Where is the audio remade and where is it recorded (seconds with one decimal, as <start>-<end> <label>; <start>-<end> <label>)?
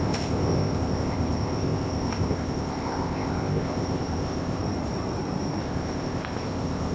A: 0.0-4.6 remade; 4.6-5.6 recorded; 5.6-6.9 remade